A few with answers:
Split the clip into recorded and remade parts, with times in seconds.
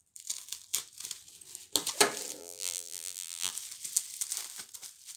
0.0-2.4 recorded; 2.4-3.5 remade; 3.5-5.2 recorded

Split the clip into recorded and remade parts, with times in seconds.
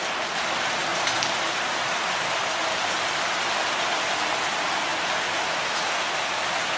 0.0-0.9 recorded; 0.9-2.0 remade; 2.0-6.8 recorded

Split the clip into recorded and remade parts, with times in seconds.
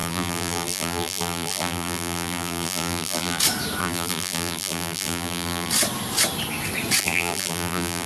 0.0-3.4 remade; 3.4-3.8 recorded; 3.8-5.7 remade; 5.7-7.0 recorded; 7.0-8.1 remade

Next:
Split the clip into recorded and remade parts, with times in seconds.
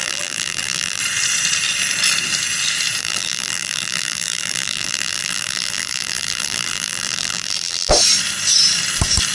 0.0-1.0 remade; 1.0-3.0 recorded; 3.0-7.9 remade; 7.9-9.3 recorded